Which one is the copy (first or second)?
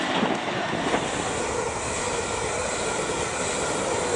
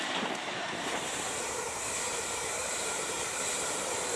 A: second